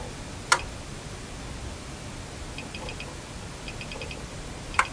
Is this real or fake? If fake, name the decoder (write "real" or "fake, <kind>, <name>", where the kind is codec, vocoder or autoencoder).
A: real